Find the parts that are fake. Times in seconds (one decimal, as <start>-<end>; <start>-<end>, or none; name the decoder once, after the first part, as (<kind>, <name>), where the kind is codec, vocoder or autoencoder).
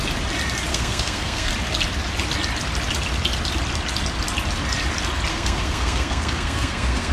0.7-1.5 (codec, SNAC); 5.3-7.1